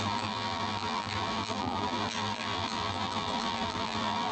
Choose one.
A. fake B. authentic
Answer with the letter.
A